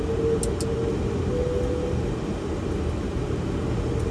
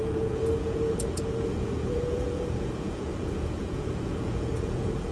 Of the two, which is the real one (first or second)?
first